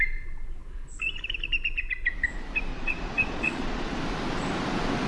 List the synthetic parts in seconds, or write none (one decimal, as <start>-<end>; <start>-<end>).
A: 2.7-4.0